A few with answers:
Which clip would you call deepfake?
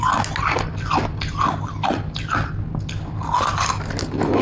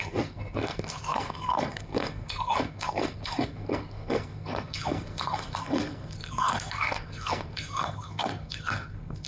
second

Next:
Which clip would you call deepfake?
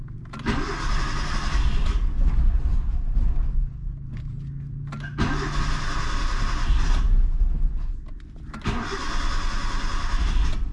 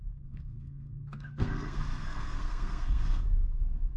second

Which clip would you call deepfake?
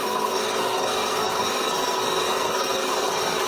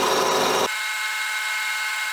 first